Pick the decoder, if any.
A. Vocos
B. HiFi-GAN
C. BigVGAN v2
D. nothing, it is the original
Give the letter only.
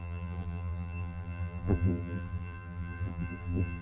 C